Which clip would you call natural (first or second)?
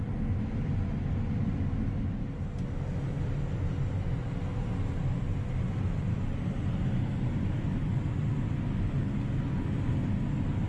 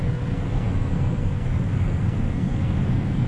first